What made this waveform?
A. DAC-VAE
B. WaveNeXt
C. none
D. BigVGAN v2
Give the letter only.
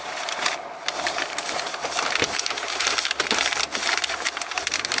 D